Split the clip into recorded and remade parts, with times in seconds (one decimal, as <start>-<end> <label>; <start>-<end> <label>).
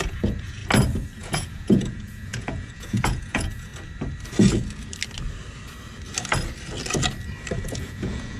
0.0-0.6 remade; 0.6-1.2 recorded; 1.2-3.7 remade; 3.7-7.6 recorded; 7.6-8.4 remade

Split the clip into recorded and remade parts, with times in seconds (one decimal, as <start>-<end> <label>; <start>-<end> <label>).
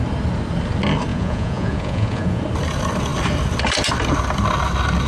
0.0-1.1 recorded; 1.1-2.4 remade; 2.4-5.1 recorded